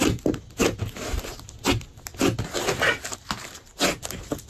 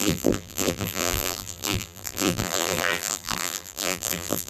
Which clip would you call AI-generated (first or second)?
second